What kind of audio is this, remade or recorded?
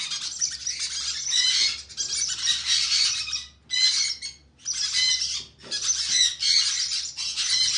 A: recorded